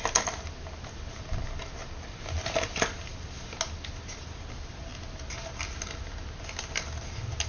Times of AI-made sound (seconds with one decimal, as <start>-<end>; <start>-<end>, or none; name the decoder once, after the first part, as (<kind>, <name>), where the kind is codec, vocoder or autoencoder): none